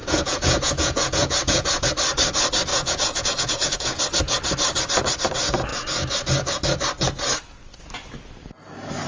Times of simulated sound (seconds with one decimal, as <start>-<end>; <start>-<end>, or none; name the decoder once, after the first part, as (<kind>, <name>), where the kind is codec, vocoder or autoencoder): 0.0-1.9 (vocoder, Vocos); 2.7-4.0